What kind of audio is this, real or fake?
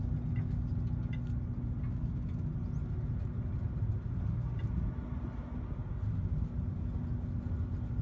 real